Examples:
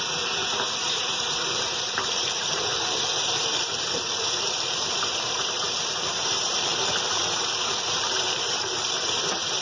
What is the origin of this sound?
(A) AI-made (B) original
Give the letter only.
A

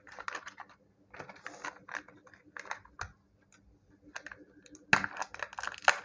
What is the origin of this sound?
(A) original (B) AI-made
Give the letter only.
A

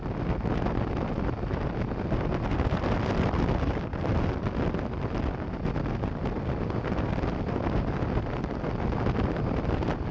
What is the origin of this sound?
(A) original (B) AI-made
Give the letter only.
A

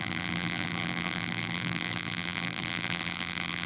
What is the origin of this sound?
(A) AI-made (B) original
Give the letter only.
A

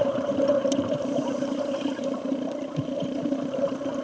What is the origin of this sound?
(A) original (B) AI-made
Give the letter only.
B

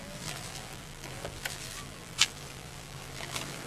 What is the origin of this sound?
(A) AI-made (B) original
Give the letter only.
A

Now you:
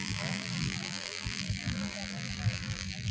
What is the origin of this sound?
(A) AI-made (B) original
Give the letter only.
A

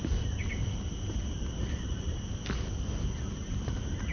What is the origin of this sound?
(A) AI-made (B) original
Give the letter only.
B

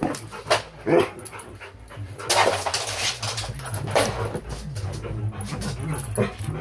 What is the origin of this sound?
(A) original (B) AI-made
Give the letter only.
A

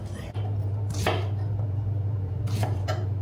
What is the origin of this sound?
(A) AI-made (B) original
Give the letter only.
A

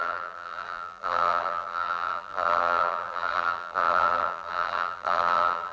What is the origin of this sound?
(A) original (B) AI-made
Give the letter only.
B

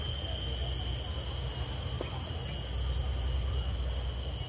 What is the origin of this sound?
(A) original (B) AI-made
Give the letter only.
A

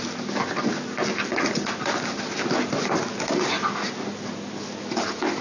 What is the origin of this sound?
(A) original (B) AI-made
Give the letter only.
A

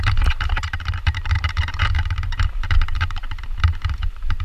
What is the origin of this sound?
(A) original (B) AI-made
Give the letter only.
B